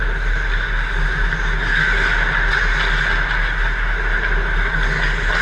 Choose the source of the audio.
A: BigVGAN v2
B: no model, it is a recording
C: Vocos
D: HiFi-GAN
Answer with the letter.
B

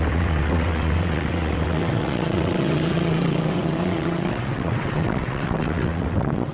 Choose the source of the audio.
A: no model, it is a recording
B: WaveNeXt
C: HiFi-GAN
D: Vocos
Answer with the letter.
B